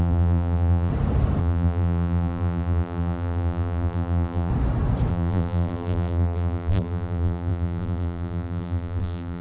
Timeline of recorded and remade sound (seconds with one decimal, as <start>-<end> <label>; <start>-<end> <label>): 0.0-0.9 remade; 0.9-1.4 recorded; 1.4-4.5 remade; 4.5-5.1 recorded; 5.1-9.4 remade